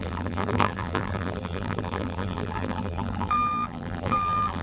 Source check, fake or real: fake